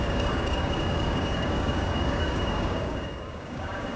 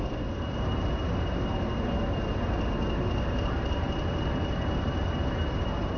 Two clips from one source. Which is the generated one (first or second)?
first